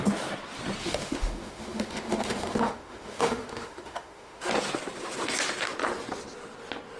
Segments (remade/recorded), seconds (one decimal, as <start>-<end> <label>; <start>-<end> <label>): 0.0-0.8 recorded; 0.8-4.5 remade; 4.5-7.0 recorded